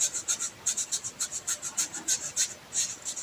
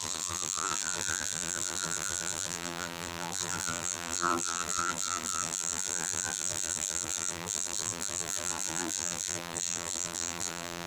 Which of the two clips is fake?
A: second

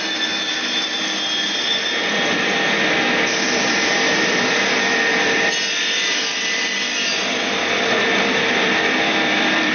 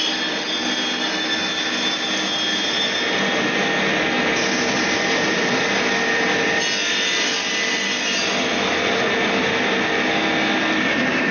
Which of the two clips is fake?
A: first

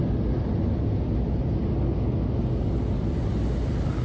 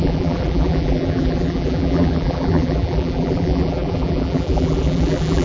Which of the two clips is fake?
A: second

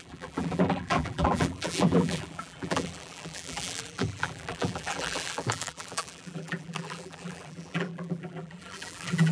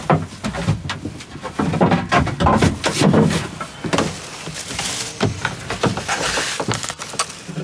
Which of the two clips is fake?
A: first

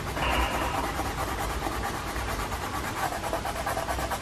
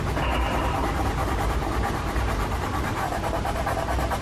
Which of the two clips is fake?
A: second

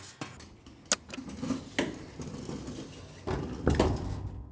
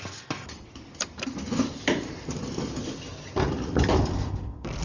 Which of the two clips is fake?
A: second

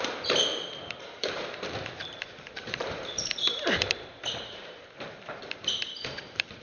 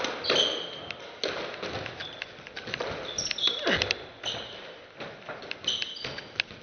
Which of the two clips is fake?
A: first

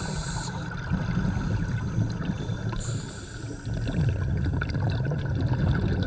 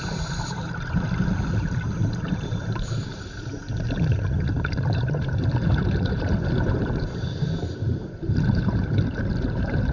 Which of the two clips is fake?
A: second